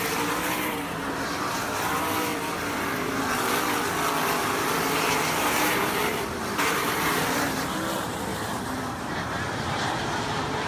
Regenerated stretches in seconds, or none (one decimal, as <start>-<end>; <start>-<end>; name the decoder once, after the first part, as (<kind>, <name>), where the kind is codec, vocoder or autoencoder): 0.0-2.3 (vocoder, BigVGAN v2); 5.0-10.7